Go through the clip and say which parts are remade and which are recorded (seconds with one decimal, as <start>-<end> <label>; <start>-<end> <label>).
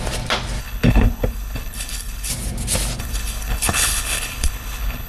0.0-0.6 recorded; 0.6-2.3 remade; 2.3-3.0 recorded; 3.0-5.1 remade